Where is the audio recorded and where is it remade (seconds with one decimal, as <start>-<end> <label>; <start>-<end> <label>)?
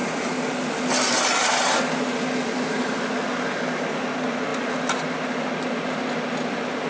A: 0.0-6.9 recorded